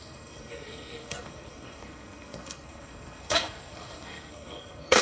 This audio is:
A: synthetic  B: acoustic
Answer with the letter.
A